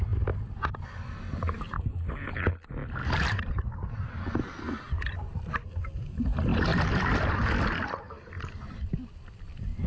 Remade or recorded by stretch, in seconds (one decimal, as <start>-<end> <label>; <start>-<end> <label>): 0.0-3.0 recorded; 3.0-4.2 remade; 4.2-9.9 recorded